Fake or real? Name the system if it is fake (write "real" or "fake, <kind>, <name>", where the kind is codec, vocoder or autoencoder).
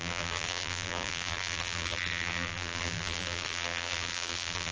fake, vocoder, BigVGAN v2